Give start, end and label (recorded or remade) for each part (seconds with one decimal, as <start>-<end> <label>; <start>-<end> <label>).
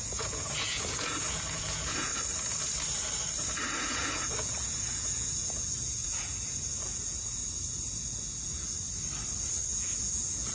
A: 0.0-2.1 remade; 2.1-3.8 recorded; 3.8-7.4 remade; 7.4-8.2 recorded; 8.2-8.7 remade; 8.7-9.7 recorded; 9.7-10.5 remade